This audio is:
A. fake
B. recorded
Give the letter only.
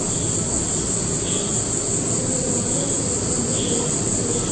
B